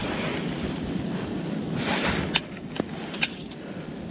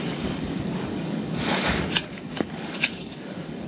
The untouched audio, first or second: first